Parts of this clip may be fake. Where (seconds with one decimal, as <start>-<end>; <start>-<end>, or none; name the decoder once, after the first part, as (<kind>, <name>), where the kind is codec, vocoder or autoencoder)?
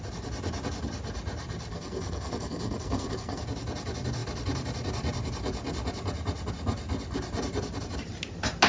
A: 1.7-3.4 (codec, SNAC)